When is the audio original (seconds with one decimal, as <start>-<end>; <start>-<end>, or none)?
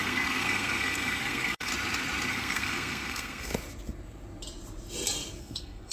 1.7-2.3; 3.5-5.4